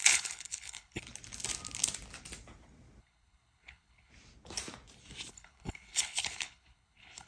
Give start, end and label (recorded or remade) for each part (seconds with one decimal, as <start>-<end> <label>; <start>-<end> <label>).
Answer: 0.0-1.0 remade; 1.0-3.0 recorded; 3.0-4.1 remade; 4.1-5.3 recorded; 5.3-7.3 remade